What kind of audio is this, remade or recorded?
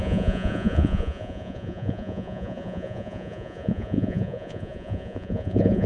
remade